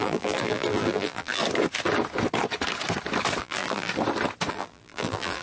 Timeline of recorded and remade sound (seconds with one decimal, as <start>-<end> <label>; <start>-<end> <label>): 0.0-1.4 remade; 1.4-3.4 recorded; 3.4-3.9 remade; 3.9-4.5 recorded; 4.5-5.4 remade